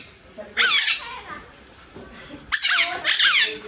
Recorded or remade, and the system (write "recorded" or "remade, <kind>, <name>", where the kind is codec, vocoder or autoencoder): recorded